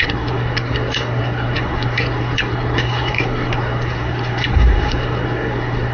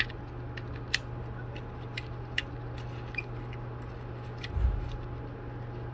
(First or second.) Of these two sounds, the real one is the second